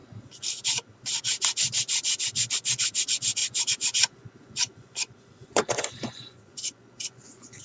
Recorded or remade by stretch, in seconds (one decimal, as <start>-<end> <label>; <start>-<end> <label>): 0.0-3.4 recorded; 3.4-7.6 remade